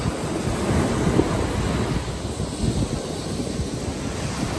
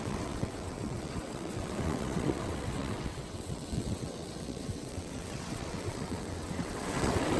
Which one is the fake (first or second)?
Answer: second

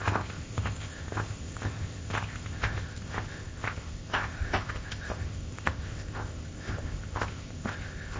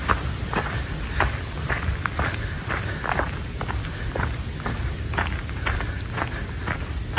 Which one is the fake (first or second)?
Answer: first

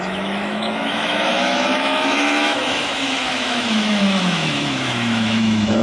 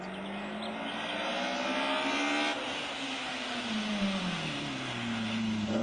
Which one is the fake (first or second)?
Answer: first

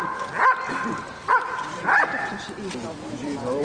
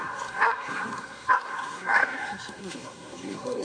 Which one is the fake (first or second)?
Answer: second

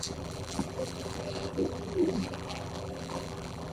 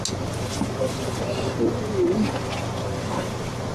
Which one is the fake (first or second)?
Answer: first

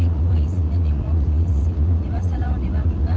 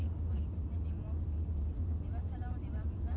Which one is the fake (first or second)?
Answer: first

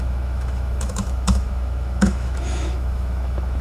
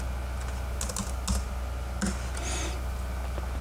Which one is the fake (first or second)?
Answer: first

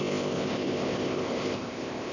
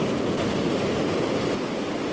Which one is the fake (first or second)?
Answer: first